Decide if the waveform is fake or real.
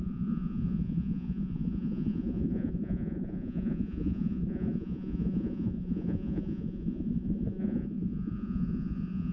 fake